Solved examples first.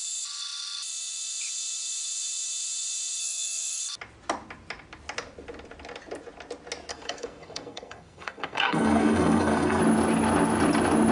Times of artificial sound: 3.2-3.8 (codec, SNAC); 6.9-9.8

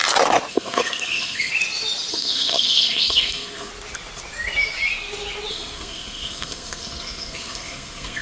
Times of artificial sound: 0.5-1.5 (codec, SNAC); 2.1-3.7; 5.5-8.2

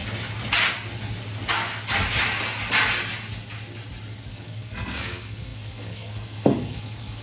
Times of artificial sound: 4.3-7.2 (codec, SNAC)

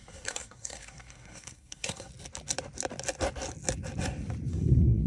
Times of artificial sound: 0.0-2.1 (codec, SNAC); 4.5-5.1

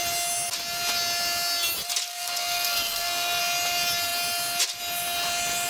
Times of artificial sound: 2.1-3.4 (codec, SNAC)

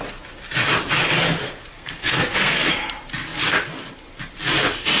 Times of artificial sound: 1.4-2.7 (codec, SNAC)